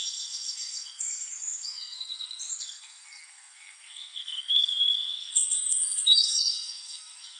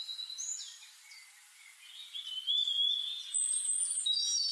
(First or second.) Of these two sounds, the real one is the second